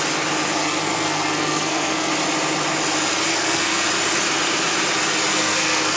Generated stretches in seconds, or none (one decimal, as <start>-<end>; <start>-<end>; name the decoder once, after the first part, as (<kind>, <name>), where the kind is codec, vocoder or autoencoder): 0.6-2.1 (codec, SNAC); 3.3-3.9; 5.3-6.0